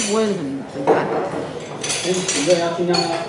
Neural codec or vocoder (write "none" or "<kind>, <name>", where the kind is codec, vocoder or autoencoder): none